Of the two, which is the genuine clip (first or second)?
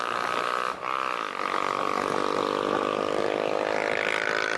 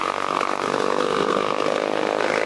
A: first